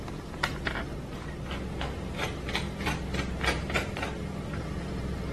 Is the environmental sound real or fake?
fake